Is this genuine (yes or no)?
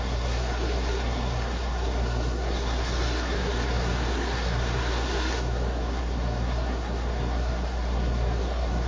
no